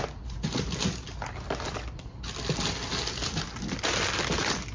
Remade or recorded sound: recorded